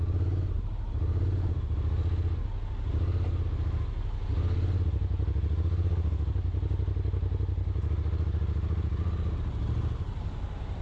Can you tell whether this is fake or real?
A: real